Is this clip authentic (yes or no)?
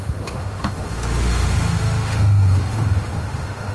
no